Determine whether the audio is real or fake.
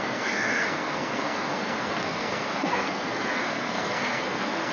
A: fake